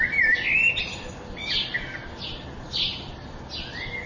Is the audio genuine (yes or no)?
yes